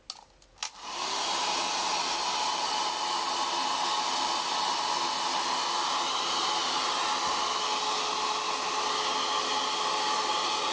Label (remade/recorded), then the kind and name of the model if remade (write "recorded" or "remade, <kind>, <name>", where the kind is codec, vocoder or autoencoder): recorded